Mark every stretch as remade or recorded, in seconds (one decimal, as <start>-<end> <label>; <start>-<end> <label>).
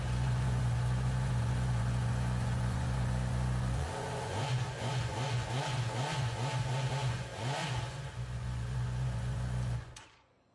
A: 0.0-10.5 remade